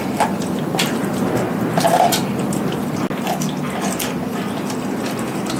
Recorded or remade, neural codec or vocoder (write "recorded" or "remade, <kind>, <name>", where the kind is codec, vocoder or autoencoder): recorded